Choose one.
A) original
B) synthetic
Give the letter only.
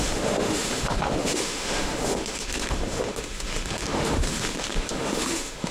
B